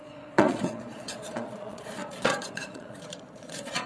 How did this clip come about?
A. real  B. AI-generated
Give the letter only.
B